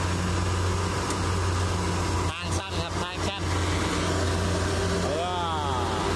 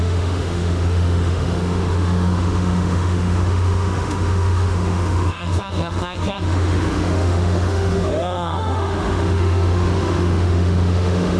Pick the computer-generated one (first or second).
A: second